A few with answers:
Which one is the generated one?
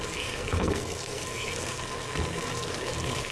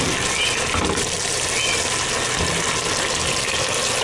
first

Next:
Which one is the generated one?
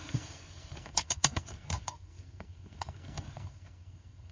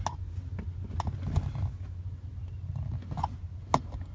first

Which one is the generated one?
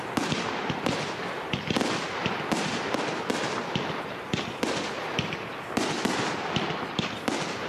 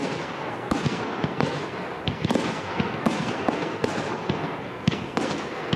second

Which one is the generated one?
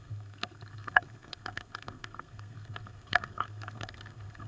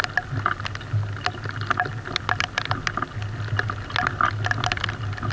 first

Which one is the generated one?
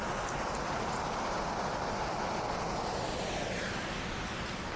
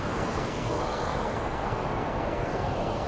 second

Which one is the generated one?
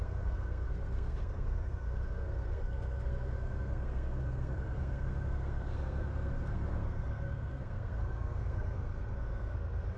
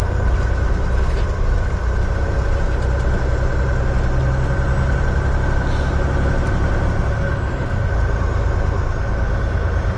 first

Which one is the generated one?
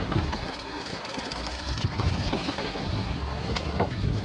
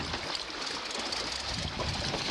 first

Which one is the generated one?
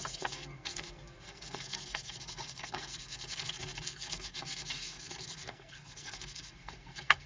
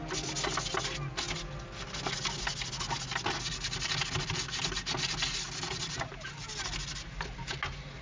first